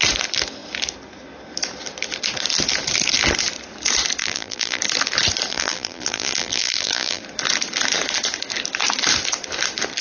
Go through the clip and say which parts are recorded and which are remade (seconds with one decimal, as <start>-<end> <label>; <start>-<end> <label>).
0.0-4.2 recorded; 4.2-4.8 remade; 4.8-5.5 recorded; 5.5-7.2 remade; 7.2-10.0 recorded